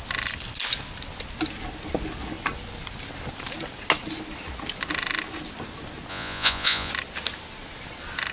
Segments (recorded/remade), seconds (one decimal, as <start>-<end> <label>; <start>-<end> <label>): 0.0-6.1 recorded; 6.1-6.9 remade; 6.9-8.3 recorded